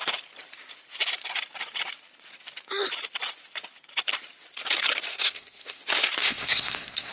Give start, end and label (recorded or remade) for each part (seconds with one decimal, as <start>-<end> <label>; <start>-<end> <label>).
0.0-5.1 recorded; 5.1-5.8 remade; 5.8-6.2 recorded; 6.2-7.1 remade